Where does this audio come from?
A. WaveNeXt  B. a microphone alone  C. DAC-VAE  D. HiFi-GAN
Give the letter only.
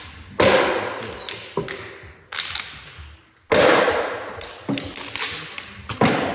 B